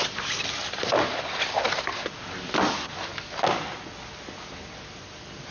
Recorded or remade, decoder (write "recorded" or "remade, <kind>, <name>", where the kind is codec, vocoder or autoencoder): recorded